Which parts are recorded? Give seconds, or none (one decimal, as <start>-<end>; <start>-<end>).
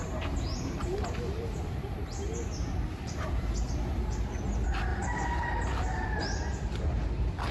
3.7-4.9; 6.2-7.5